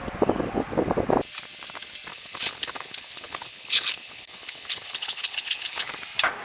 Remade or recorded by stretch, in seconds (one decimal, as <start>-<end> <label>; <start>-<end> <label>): 0.0-2.1 recorded; 2.1-5.9 remade; 5.9-6.4 recorded